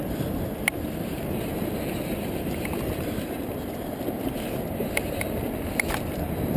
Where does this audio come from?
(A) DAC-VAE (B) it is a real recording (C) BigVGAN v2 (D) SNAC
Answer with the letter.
C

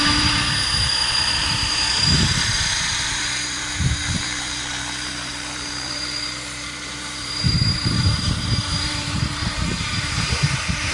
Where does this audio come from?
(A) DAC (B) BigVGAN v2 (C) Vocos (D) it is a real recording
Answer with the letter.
B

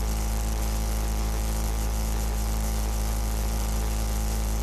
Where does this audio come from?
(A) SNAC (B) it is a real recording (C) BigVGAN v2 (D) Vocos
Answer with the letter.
C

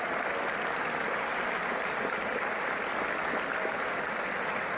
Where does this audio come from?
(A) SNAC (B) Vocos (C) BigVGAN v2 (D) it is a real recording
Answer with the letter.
C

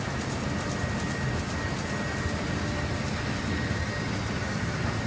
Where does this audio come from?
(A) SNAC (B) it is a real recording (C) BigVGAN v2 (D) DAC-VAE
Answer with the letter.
B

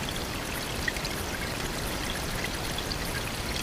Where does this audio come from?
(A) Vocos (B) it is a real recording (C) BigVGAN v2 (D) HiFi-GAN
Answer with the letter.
B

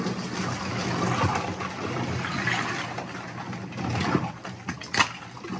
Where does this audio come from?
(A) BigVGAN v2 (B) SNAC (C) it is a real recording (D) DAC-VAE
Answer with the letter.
C